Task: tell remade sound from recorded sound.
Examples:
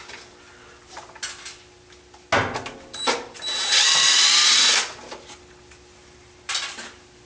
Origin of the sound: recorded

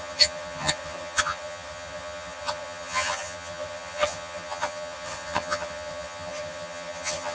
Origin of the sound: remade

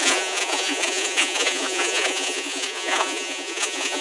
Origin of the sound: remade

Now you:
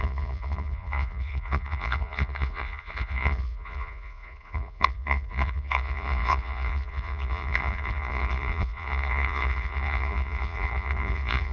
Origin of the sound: remade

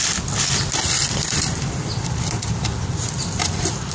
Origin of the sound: remade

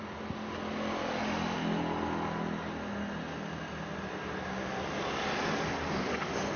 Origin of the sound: recorded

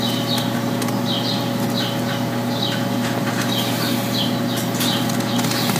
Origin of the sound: recorded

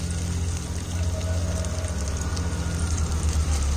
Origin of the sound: recorded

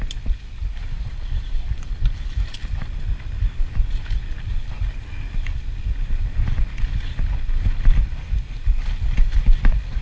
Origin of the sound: recorded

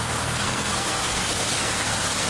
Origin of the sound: remade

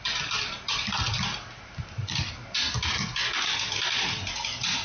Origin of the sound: recorded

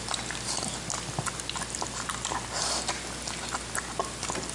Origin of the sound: recorded